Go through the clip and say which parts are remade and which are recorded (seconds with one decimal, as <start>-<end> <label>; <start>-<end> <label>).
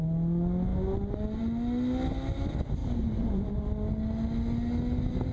0.0-2.8 recorded; 2.8-3.5 remade; 3.5-5.3 recorded